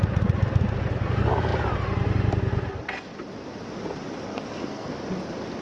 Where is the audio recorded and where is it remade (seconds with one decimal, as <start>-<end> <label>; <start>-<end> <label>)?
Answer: 0.0-4.3 recorded; 4.3-4.9 remade; 4.9-5.6 recorded